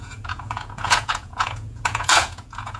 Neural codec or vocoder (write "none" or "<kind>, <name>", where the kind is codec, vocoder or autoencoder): vocoder, Vocos